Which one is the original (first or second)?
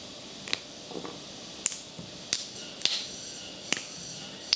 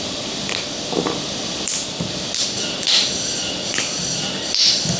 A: first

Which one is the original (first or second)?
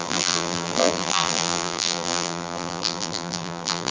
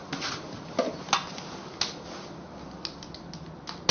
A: second